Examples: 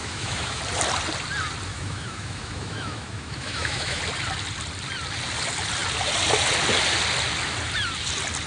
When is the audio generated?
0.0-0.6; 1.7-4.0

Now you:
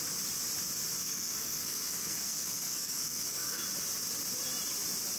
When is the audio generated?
1.0-3.6

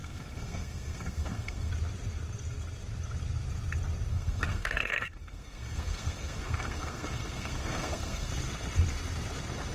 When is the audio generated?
0.0-1.7; 4.1-8.3

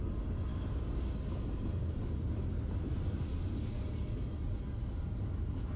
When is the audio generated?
0.5-1.3

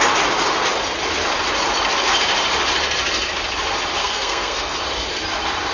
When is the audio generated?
4.0-4.8

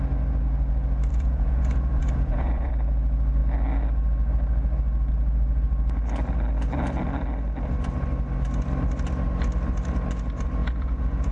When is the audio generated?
1.1-2.7; 10.6-11.3

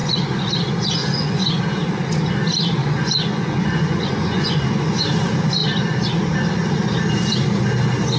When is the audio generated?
0.0-0.5; 1.0-1.6; 2.8-5.0